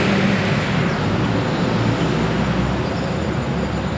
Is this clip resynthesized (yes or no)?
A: no